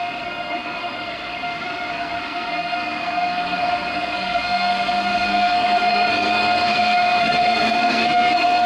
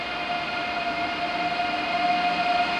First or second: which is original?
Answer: second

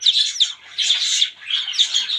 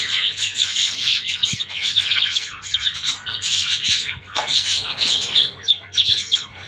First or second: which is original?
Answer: first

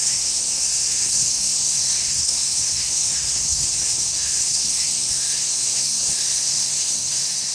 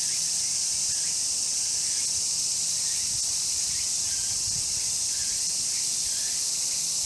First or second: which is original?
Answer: second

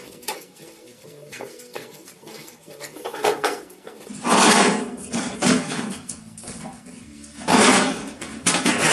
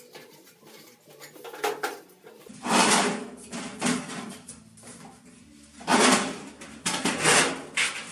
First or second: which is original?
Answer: second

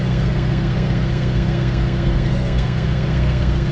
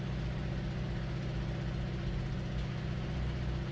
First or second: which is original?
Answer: second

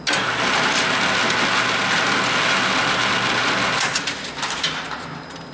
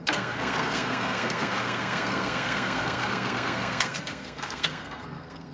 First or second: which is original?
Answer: first